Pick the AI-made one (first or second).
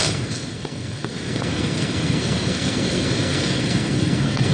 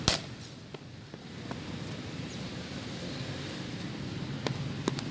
first